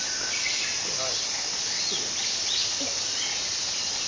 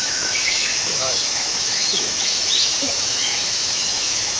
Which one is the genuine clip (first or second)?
first